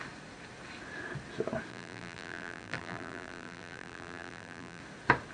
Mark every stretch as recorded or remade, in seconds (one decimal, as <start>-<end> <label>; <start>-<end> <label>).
0.0-1.7 recorded; 1.7-4.8 remade; 4.8-5.3 recorded